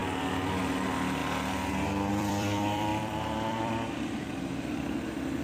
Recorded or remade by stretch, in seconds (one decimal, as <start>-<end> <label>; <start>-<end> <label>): 0.0-0.6 recorded; 0.6-1.2 remade; 1.2-2.1 recorded; 2.1-5.4 remade